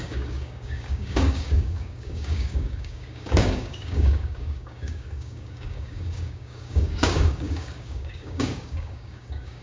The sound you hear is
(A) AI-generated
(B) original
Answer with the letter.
A